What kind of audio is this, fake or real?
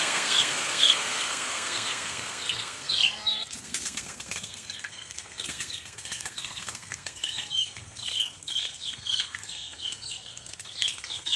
fake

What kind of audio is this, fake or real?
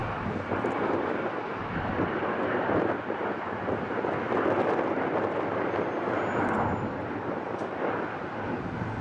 real